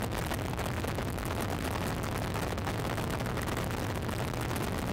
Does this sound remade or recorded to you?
recorded